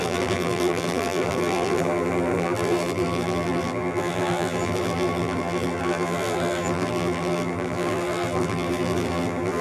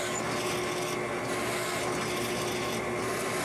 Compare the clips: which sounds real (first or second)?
second